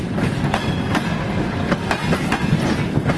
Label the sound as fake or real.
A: real